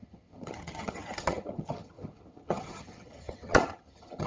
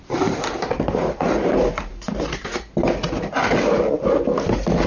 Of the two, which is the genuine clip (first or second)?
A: second